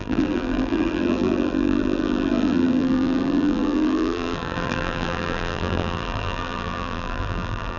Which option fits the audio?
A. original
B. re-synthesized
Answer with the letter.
B